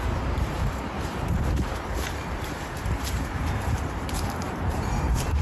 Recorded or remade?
remade